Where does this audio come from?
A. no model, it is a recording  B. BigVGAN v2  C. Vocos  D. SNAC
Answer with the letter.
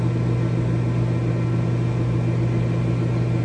A